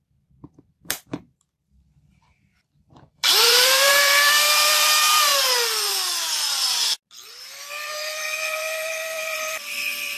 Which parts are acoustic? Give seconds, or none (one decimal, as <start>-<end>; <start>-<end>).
5.3-7.7